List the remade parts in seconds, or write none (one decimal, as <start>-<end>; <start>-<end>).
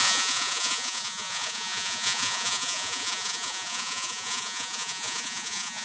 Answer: 0.0-5.8